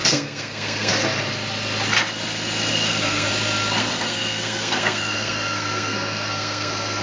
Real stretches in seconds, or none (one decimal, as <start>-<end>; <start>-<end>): 0.9-2.7; 3.3-3.8